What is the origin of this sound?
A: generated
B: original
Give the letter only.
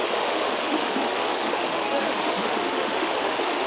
A